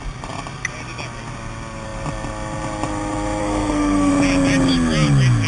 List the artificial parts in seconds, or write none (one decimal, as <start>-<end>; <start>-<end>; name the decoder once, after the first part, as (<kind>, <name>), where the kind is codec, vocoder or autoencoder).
3.4-4.1 (codec, SNAC)